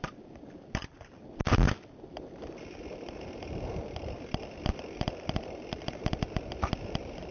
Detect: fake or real real